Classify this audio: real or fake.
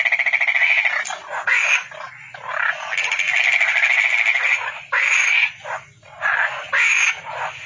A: real